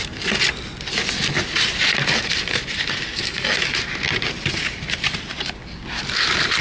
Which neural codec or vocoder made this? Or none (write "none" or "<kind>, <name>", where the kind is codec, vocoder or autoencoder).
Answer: none